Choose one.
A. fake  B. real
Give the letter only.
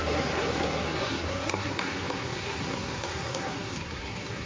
A